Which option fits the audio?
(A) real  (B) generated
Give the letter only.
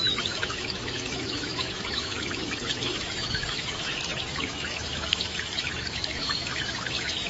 B